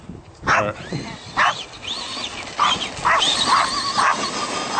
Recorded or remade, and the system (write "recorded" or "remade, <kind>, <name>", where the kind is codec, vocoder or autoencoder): recorded